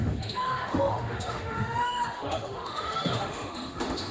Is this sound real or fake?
fake